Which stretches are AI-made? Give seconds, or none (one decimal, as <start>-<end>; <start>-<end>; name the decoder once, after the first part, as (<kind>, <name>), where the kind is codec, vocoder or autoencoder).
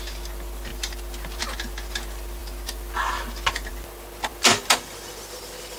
none